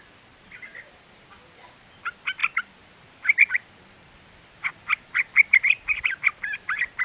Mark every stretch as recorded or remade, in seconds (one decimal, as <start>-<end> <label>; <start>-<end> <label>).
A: 0.0-7.0 recorded

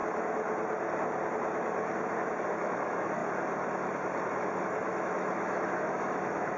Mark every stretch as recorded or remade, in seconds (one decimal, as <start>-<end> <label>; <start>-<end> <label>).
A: 0.0-2.6 recorded; 2.6-3.2 remade; 3.2-4.5 recorded; 4.5-6.6 remade

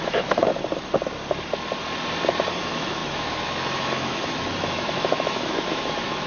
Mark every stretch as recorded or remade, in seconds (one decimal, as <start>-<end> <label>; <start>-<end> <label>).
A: 0.0-0.5 remade; 0.5-2.6 recorded; 2.6-6.3 remade